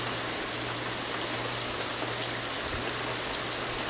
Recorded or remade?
recorded